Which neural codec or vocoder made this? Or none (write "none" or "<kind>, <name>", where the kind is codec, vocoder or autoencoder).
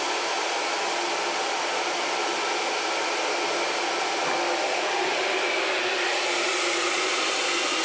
none